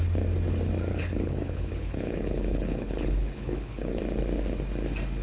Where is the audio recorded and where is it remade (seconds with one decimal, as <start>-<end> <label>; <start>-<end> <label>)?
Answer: 0.0-0.9 recorded; 0.9-4.0 remade; 4.0-5.2 recorded